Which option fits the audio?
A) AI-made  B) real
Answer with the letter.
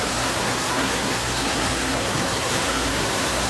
A